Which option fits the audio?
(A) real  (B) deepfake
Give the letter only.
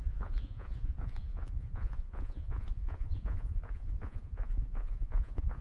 B